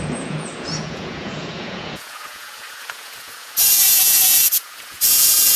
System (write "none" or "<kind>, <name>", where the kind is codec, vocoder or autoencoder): vocoder, Vocos